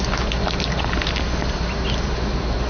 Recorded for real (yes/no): yes